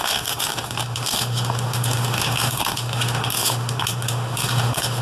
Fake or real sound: fake